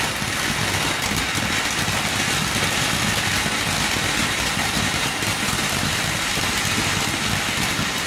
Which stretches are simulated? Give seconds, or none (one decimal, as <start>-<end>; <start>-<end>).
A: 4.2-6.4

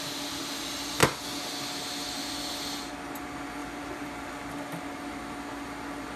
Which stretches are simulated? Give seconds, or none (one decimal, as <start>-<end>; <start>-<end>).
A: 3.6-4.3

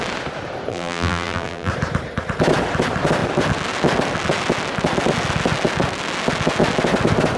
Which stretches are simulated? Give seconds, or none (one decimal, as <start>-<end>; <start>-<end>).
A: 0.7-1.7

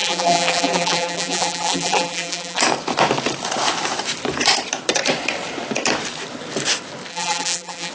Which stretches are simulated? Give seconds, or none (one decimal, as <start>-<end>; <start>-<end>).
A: 0.0-2.6; 7.1-7.9

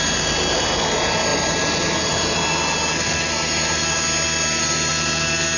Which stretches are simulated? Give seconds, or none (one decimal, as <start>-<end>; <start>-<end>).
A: none

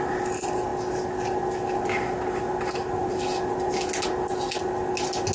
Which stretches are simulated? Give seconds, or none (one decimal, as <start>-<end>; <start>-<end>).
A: none

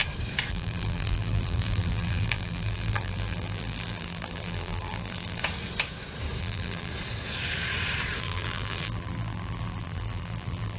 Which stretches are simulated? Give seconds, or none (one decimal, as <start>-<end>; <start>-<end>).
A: 0.5-5.4; 6.4-6.9; 8.2-10.8